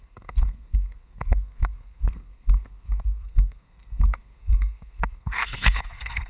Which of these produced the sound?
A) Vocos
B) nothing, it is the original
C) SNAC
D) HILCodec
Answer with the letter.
C